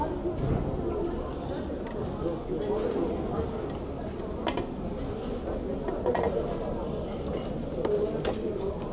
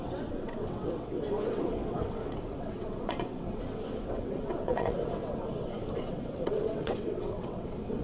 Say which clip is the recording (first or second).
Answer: first